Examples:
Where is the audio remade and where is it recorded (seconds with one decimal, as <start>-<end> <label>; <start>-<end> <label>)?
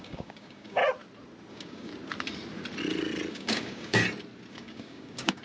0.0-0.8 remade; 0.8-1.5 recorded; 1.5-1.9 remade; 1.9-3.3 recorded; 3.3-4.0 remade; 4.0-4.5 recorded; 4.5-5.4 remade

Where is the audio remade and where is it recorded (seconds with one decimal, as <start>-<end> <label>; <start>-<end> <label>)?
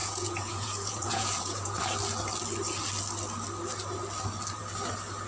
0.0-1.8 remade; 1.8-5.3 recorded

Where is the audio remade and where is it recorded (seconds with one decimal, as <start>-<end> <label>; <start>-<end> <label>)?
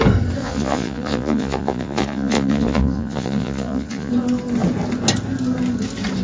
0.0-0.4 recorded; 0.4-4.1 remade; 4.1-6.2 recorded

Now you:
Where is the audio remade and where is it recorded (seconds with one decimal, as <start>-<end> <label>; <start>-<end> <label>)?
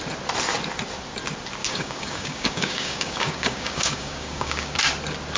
0.0-1.6 recorded; 1.6-4.8 remade; 4.8-5.4 recorded